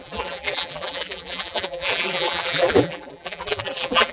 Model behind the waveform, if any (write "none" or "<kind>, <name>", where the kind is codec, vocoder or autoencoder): vocoder, BigVGAN v2